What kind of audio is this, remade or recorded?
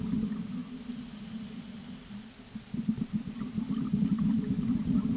recorded